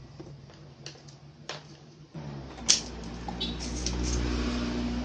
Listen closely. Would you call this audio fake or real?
real